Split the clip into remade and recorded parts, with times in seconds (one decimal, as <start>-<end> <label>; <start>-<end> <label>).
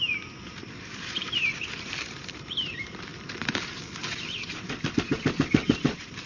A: 0.0-3.1 remade; 3.1-4.9 recorded; 4.9-6.3 remade